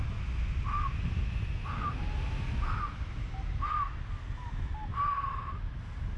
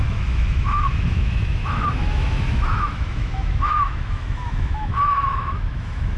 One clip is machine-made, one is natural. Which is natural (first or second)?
first